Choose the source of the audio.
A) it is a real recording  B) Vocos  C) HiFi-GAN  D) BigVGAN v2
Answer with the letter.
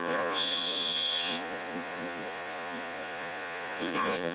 B